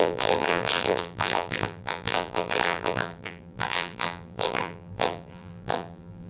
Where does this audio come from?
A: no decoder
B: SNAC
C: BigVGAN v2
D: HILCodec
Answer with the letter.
C